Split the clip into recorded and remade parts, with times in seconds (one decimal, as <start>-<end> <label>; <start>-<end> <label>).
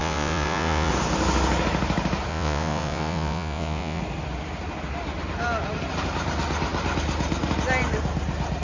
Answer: 0.0-0.9 remade; 0.9-2.3 recorded; 2.3-4.0 remade; 4.0-8.6 recorded